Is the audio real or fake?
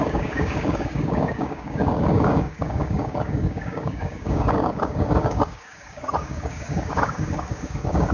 fake